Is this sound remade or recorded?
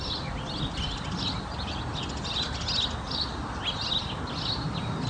recorded